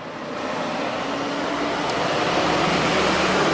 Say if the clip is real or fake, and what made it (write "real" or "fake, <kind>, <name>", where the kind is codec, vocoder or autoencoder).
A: real